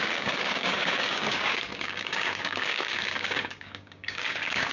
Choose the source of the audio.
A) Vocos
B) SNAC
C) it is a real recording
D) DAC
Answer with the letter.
D